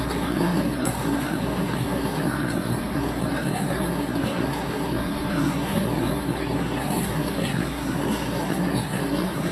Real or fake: fake